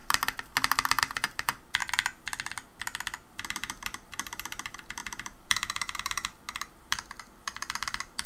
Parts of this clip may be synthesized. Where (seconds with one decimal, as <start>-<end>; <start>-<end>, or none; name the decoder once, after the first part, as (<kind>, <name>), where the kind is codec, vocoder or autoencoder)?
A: 1.0-1.8 (vocoder, BigVGAN v2); 3.3-8.3